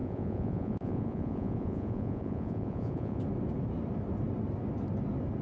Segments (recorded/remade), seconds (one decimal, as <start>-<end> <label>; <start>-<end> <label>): 0.0-3.2 remade; 3.2-5.4 recorded